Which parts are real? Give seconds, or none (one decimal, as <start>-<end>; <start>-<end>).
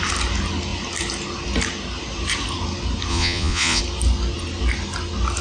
0.0-3.1; 3.8-5.4